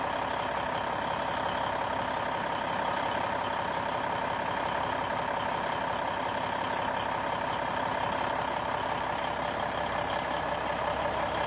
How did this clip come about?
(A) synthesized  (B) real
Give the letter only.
B